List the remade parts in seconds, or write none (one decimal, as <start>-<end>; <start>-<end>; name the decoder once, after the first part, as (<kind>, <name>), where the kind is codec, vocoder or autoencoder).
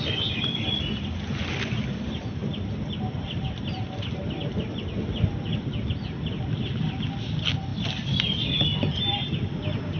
2.4-4.0 (vocoder, BigVGAN v2)